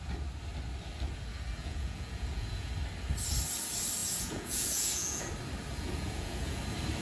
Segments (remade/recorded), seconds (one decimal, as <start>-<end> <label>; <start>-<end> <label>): 0.0-1.6 recorded; 1.6-2.7 remade; 2.7-4.0 recorded; 4.0-5.3 remade; 5.3-5.7 recorded; 5.7-6.6 remade; 6.6-7.0 recorded